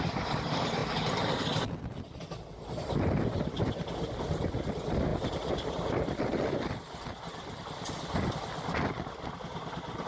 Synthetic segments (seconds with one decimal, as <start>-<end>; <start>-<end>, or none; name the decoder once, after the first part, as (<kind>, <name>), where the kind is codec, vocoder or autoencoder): 0.8-1.7 (vocoder, BigVGAN v2); 5.1-6.2